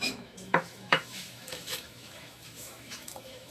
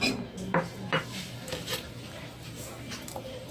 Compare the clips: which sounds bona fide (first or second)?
second